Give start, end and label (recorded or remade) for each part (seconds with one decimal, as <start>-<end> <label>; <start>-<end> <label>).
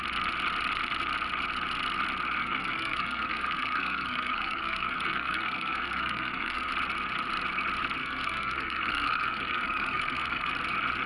0.0-2.4 recorded; 2.4-6.7 remade; 6.7-8.0 recorded; 8.0-10.5 remade; 10.5-11.1 recorded